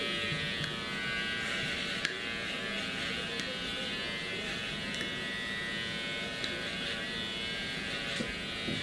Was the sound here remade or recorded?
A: recorded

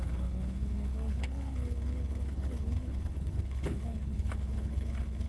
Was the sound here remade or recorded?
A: remade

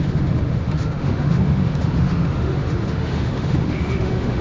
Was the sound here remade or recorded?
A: remade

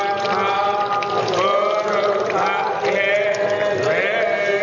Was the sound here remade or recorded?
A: recorded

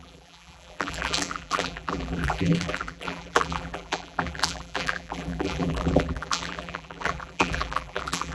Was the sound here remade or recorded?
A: remade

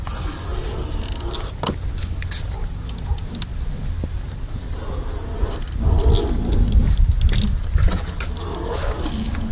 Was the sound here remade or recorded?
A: recorded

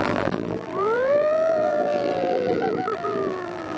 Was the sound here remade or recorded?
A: remade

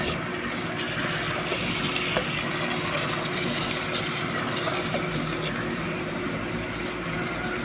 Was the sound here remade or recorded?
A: recorded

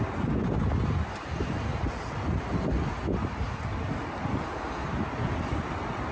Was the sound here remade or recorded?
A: recorded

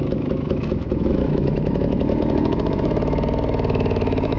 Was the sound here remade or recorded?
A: remade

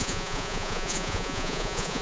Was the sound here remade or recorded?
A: remade